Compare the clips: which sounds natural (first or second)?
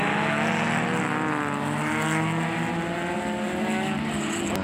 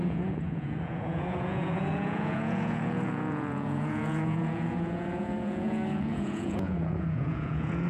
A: first